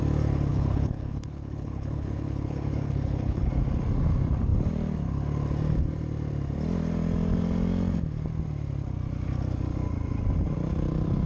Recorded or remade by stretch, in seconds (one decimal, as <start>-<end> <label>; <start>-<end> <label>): 0.0-0.5 recorded; 0.5-3.5 remade; 3.5-11.3 recorded